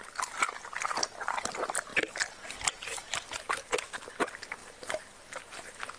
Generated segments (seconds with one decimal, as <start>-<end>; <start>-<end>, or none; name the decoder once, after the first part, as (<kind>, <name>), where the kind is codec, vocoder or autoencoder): none